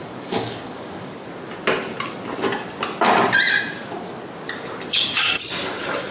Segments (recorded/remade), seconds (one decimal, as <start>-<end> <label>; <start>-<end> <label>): 0.0-1.2 remade; 1.2-4.9 recorded; 4.9-5.4 remade; 5.4-6.1 recorded